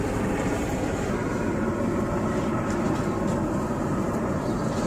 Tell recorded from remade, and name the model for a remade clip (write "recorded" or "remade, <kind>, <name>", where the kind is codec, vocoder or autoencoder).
remade, vocoder, BigVGAN v2